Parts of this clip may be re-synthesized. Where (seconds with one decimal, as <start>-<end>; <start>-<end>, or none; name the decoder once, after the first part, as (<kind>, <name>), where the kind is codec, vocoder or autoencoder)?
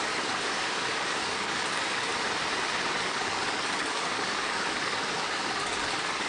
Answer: 0.0-2.1 (codec, DAC); 3.0-6.3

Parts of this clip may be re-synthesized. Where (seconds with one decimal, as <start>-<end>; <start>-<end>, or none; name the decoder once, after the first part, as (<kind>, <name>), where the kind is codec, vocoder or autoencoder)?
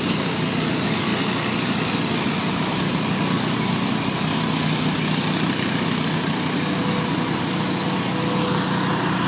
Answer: none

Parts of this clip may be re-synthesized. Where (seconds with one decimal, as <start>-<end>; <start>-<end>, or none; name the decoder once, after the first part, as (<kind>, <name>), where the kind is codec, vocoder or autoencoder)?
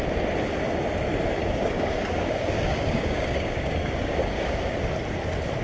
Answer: 1.4-4.8 (codec, DAC)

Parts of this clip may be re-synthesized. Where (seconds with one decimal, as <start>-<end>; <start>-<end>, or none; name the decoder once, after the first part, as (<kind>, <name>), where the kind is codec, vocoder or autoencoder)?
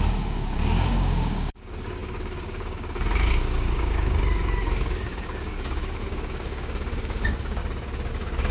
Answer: 0.0-7.6 (codec, DAC); 8.1-8.5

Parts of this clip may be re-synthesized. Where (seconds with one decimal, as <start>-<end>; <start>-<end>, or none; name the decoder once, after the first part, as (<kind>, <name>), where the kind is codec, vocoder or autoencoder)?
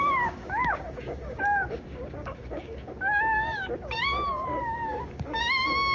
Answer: 0.0-5.9 (codec, DAC)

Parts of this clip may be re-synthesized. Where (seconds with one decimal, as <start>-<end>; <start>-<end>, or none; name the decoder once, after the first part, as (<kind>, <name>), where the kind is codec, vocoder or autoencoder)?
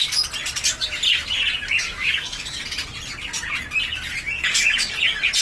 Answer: 1.8-2.6 (codec, DAC); 4.4-4.9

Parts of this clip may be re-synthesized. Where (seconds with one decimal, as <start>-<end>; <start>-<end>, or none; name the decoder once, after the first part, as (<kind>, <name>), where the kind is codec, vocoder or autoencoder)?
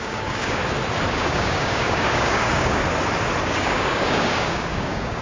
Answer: 0.0-0.6 (codec, DAC); 1.1-2.8; 3.4-5.2